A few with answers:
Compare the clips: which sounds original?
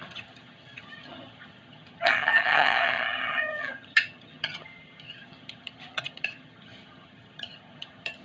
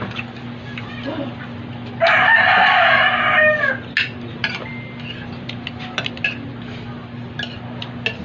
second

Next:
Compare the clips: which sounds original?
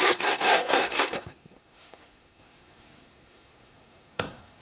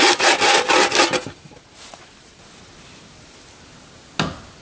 second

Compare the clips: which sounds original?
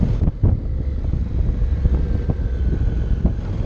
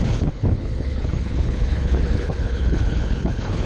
first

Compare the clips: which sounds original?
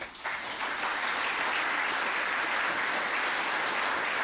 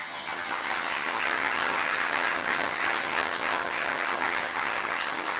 first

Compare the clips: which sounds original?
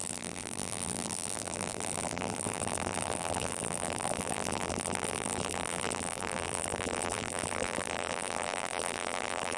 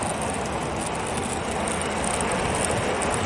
second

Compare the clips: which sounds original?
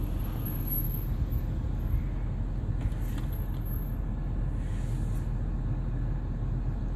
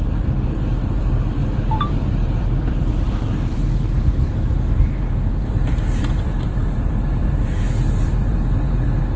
first